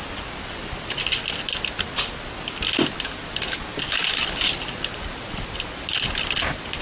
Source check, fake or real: real